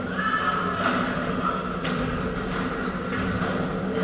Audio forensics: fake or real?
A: real